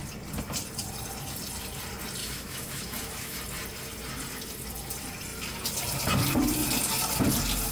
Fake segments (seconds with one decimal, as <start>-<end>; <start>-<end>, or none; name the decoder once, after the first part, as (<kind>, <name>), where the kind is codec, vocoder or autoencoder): 2.2-3.4 (autoencoder, DAC-VAE)